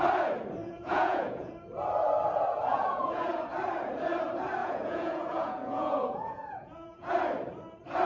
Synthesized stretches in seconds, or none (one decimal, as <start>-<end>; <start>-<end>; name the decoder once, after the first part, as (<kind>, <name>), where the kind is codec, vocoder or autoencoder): 0.6-1.5 (vocoder, Vocos); 2.7-3.3; 4.6-7.1